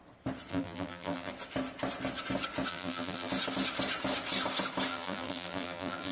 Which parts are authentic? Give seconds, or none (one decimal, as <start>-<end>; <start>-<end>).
0.0-0.5; 1.3-2.7; 3.3-4.9